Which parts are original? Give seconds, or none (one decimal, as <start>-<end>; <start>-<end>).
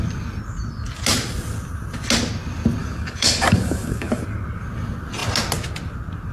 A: 0.0-2.8; 4.2-6.3